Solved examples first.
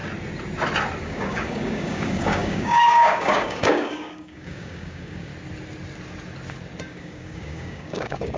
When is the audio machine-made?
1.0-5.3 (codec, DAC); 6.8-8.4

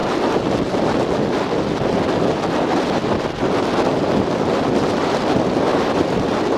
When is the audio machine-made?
5.7-6.6 (vocoder, BigVGAN v2)